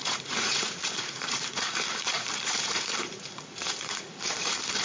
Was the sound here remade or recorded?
remade